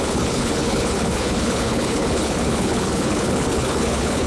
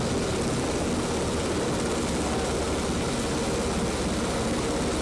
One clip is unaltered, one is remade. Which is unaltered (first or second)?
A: second